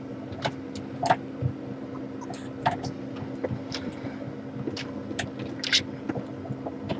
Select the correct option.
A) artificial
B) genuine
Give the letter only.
B